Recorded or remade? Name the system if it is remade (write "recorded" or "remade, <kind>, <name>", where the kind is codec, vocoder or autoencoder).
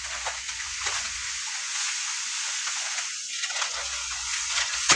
remade, vocoder, Vocos